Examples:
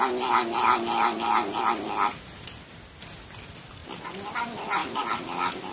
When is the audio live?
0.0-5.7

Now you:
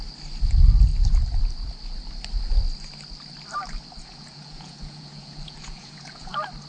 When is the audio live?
0.0-4.0; 6.3-6.7

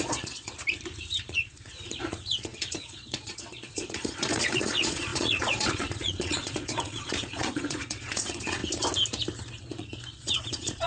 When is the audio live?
0.5-1.2; 8.6-9.5

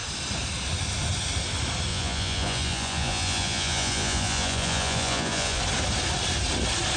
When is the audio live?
0.0-1.9; 5.6-7.0

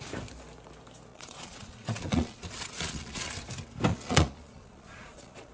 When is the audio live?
0.0-1.1; 3.3-3.9